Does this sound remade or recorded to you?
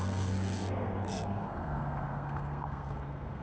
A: remade